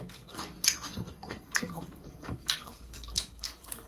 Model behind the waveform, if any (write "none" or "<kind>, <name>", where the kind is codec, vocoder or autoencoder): codec, SNAC